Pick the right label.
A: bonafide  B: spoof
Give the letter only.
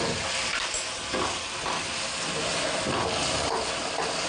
A